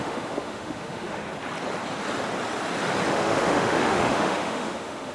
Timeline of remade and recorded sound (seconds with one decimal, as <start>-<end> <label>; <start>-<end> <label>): 0.0-1.2 remade; 1.2-3.1 recorded; 3.1-5.1 remade